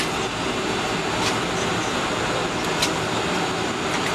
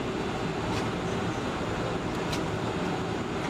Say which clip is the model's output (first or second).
second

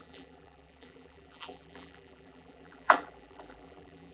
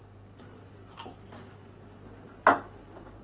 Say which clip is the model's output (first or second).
first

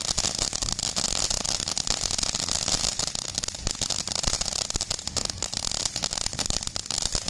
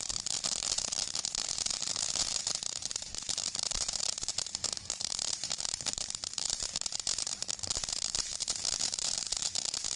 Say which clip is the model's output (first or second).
second